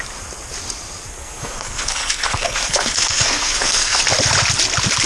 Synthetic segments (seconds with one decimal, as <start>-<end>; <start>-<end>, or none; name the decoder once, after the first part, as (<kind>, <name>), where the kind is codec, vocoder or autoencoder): 1.2-4.0 (codec, SNAC)